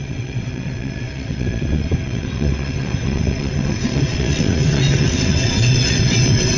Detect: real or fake fake